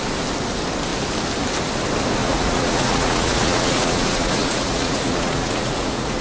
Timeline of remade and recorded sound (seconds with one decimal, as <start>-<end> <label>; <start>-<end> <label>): 0.0-2.2 recorded; 2.2-6.2 remade